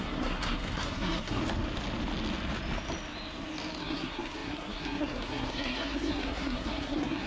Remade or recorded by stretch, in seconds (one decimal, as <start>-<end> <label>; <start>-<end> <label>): 0.0-1.4 remade; 1.4-3.8 recorded; 3.8-7.3 remade